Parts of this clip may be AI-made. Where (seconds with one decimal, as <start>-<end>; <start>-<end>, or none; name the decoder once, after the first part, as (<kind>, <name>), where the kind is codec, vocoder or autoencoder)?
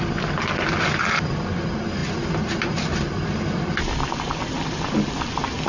none